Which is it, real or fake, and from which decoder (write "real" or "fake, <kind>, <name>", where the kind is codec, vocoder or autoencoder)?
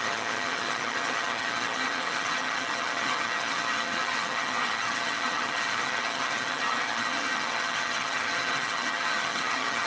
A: fake, vocoder, HiFi-GAN